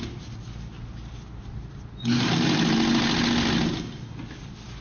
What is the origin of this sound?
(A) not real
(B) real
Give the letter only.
B